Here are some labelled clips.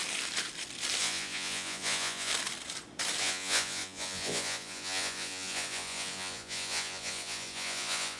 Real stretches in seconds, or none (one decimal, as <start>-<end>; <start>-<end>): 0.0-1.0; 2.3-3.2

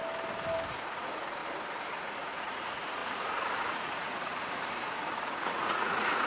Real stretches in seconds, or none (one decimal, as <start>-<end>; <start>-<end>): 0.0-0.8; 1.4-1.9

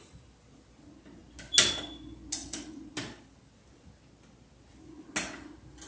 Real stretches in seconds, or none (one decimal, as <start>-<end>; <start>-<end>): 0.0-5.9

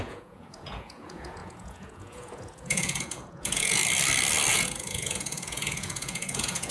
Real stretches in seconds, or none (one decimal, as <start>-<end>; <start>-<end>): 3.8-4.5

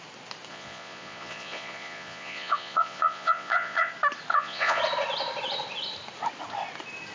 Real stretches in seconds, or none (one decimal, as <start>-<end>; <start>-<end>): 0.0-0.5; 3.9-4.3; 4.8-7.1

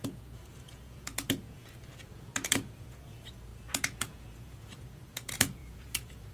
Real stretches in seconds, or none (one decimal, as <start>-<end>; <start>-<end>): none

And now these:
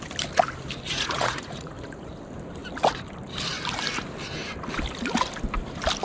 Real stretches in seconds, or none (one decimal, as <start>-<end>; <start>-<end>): 0.0-0.9; 2.1-6.0